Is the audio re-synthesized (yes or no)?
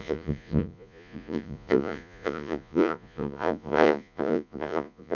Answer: yes